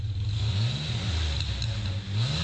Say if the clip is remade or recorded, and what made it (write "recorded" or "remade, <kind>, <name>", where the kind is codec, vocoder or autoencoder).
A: recorded